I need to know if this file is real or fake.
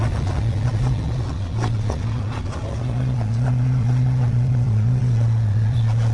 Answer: fake